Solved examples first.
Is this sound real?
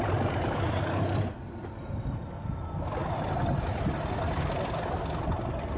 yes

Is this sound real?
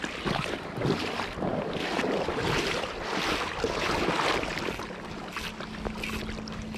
yes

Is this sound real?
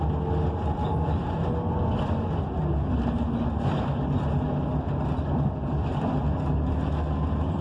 yes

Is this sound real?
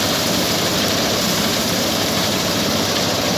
no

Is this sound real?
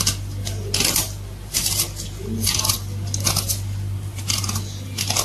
yes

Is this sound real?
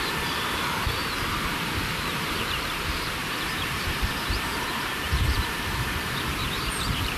no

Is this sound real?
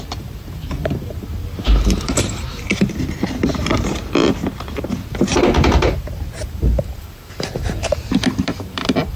no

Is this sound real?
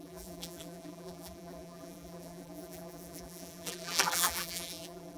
no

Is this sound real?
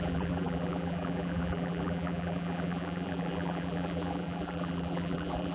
no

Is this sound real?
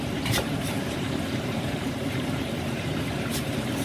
no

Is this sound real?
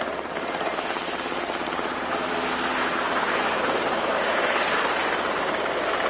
no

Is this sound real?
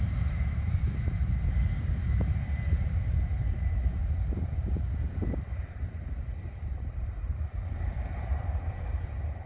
no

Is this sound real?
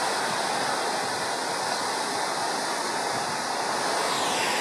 yes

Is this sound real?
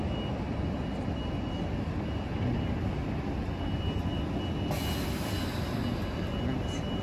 yes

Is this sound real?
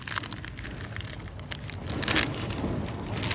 yes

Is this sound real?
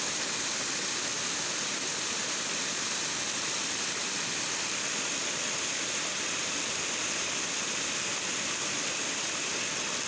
no